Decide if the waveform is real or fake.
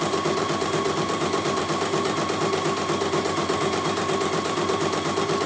fake